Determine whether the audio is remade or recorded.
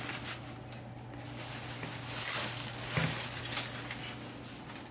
recorded